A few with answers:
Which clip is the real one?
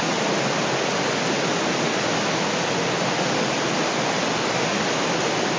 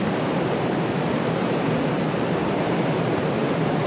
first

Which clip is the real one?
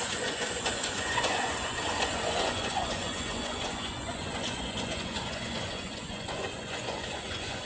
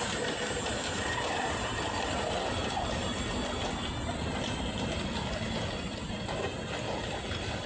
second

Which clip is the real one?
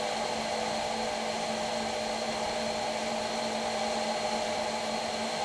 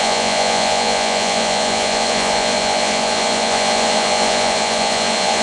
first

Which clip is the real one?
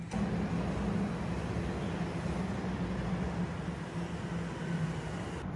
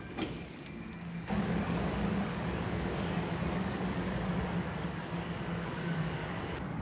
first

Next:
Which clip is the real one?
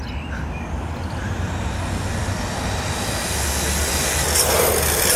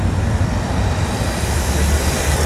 first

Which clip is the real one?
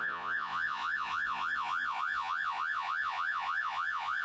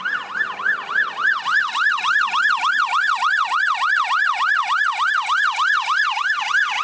second